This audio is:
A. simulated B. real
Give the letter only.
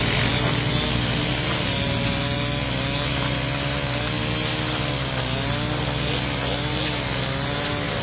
B